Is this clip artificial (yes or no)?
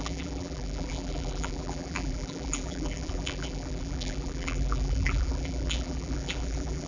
yes